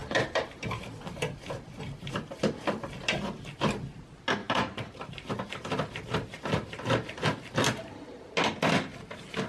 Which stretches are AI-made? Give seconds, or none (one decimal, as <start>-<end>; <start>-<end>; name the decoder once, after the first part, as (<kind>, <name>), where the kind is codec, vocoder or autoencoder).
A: 0.0-1.0 (vocoder, BigVGAN v2); 4.4-5.3